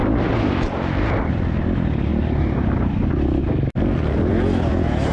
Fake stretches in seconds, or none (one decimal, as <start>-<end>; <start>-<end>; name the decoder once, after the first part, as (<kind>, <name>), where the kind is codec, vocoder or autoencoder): 0.0-1.3 (vocoder, BigVGAN v2); 2.1-3.4